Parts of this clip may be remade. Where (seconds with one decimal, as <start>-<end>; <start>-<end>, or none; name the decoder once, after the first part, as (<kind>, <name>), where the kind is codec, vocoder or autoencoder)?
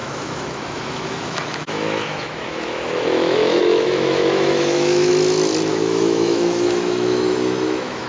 0.0-5.1 (autoencoder, DAC-VAE); 5.7-8.1